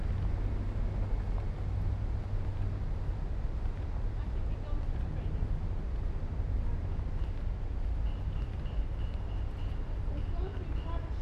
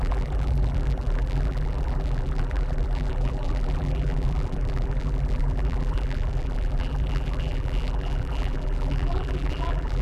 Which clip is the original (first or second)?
first